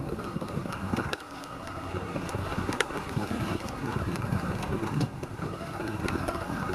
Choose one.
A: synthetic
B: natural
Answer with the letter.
A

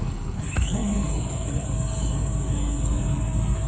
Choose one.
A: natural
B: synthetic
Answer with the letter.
B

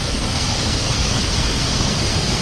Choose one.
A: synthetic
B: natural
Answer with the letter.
A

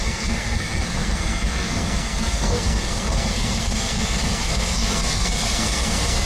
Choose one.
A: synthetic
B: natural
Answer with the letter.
A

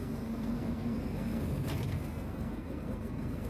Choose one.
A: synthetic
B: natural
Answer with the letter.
A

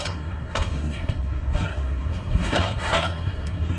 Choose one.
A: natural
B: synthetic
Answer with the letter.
B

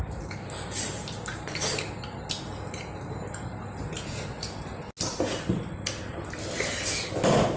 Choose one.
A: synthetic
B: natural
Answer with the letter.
B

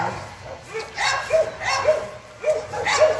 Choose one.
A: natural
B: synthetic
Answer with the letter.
A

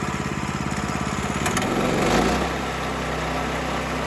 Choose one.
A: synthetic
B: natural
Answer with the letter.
B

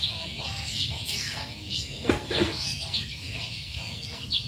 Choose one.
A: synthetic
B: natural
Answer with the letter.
A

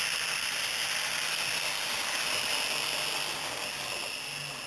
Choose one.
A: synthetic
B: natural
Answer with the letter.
B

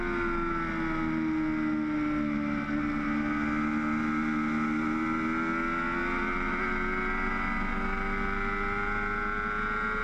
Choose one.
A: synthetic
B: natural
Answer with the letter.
B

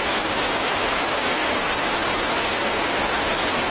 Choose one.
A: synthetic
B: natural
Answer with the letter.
B